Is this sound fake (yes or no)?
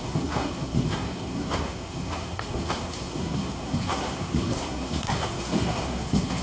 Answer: yes